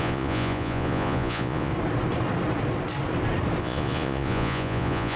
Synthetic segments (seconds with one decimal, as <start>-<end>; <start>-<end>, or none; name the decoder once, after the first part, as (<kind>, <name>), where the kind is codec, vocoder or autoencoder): 0.0-1.7 (vocoder, Vocos); 3.6-5.2